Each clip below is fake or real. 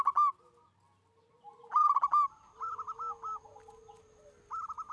real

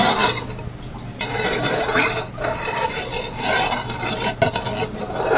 real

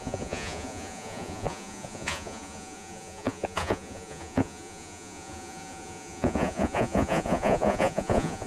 fake